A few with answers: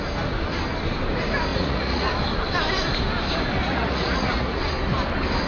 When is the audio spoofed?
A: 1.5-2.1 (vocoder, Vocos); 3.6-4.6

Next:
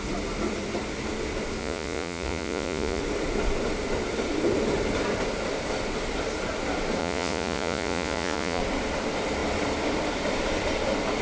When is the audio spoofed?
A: 1.6-3.0 (vocoder, Vocos); 7.0-8.6

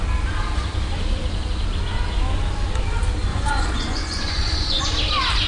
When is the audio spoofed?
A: 3.3-4.8 (vocoder, Vocos)

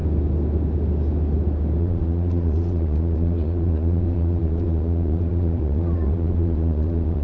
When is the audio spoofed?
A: 1.8-7.2 (vocoder, Vocos)

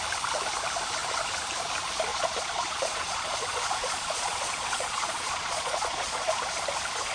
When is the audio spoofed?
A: 2.1-6.4 (vocoder, Vocos)